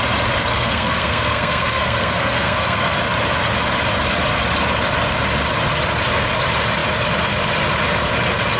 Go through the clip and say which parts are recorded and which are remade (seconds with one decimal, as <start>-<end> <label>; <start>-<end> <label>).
0.0-0.5 recorded; 0.5-3.0 remade; 3.0-8.6 recorded